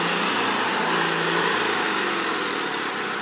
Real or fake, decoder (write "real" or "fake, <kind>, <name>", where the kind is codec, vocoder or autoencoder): real